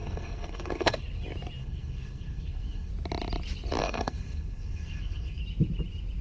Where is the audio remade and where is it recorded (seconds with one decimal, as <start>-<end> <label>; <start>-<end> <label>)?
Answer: 0.0-1.0 remade; 1.0-1.6 recorded; 1.6-2.9 remade; 2.9-3.8 recorded; 3.8-5.4 remade; 5.4-6.2 recorded